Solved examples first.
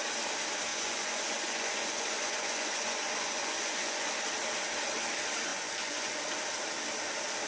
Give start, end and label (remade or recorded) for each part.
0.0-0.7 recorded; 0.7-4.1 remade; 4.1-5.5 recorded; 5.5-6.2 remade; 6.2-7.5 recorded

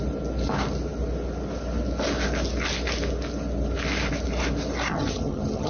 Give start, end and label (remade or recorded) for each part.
0.0-4.9 recorded; 4.9-5.7 remade